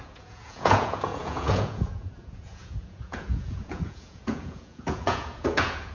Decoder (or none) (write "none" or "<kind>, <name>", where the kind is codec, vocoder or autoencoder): vocoder, Vocos